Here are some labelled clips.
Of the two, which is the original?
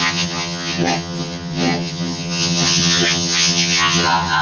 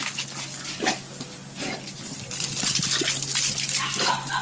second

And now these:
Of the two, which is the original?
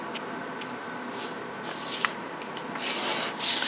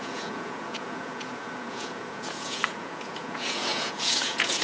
first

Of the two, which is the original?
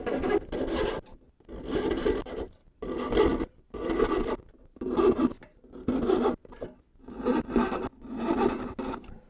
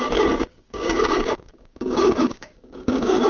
first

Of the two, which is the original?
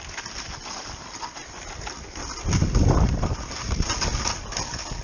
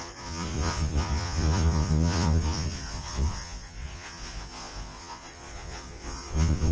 first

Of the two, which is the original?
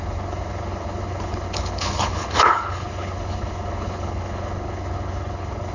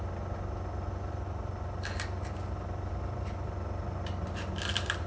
second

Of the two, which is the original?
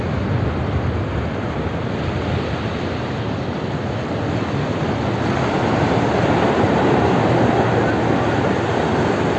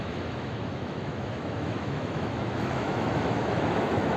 first